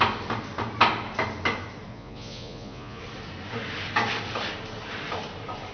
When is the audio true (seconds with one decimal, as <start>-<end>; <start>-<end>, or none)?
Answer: 0.0-1.9; 3.0-5.7